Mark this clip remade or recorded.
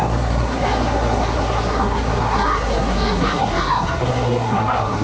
remade